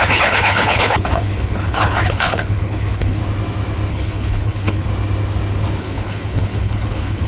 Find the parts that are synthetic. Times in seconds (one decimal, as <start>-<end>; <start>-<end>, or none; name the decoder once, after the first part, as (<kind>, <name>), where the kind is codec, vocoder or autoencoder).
0.0-3.2 (codec, HILCodec); 3.9-4.9; 5.8-7.3